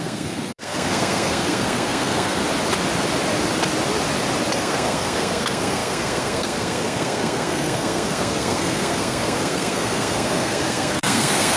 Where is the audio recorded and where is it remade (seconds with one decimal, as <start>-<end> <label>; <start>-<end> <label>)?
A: 0.0-2.4 remade; 2.4-4.5 recorded; 4.5-11.6 remade